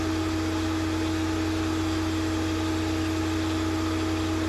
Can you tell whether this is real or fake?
real